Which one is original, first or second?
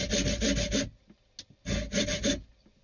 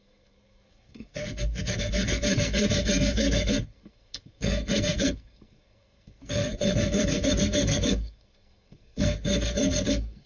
first